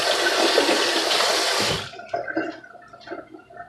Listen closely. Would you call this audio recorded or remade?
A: recorded